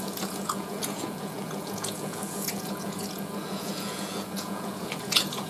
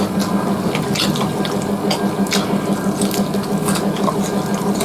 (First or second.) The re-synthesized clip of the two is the first